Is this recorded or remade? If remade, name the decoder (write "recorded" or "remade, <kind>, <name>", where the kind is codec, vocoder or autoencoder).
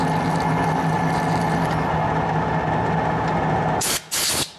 recorded